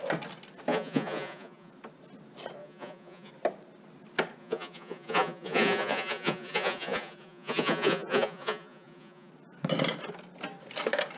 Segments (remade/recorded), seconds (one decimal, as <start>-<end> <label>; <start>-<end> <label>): 0.0-0.7 recorded; 0.7-1.7 remade; 1.7-2.6 recorded; 2.6-3.3 remade; 3.3-4.4 recorded; 4.4-9.3 remade; 9.3-11.2 recorded